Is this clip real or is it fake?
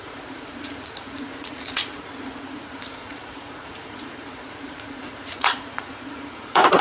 fake